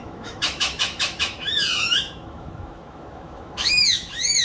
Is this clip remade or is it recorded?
remade